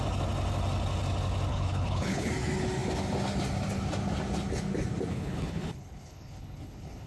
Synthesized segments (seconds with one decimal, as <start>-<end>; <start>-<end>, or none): 1.5-2.3; 5.1-7.1